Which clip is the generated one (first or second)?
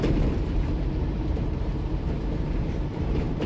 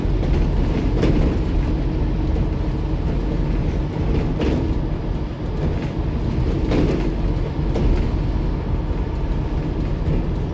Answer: first